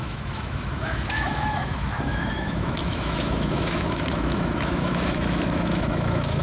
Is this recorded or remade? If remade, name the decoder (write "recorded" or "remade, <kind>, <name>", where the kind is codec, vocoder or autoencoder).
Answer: remade, autoencoder, DAC-VAE